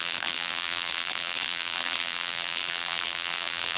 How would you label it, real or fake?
fake